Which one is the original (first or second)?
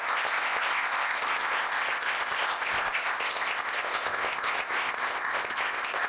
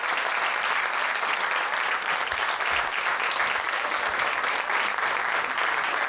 second